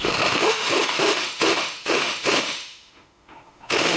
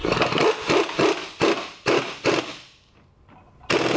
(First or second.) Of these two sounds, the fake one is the first